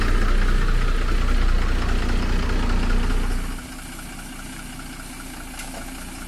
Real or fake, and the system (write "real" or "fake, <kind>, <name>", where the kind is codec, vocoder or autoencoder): real